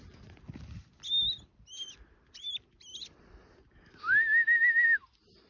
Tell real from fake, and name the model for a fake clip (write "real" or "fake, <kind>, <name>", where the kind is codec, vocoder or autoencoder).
real